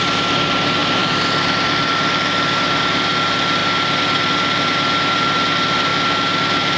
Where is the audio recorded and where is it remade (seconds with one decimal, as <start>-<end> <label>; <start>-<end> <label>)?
0.0-3.6 remade; 3.6-4.2 recorded; 4.2-6.8 remade